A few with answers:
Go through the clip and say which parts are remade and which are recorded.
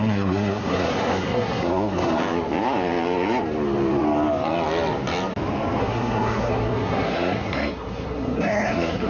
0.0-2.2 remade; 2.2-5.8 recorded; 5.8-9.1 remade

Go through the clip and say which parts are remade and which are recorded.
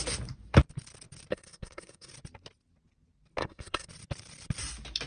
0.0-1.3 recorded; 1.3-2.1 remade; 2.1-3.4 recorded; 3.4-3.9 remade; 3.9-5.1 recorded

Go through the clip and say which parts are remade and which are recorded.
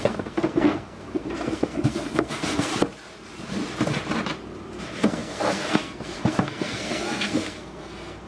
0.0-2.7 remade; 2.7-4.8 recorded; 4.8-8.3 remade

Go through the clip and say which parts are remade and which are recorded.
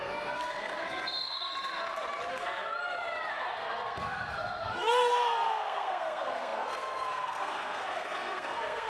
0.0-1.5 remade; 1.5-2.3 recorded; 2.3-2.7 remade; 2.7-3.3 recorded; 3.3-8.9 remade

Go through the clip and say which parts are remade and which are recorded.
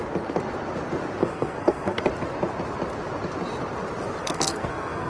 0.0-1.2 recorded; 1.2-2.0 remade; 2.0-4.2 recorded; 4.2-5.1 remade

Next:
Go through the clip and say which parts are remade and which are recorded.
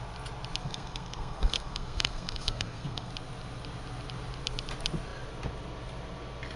0.0-0.6 recorded; 0.6-3.1 remade; 3.1-6.6 recorded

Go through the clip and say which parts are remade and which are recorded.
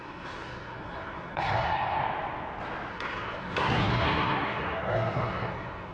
0.0-2.0 remade; 2.0-2.9 recorded; 2.9-5.9 remade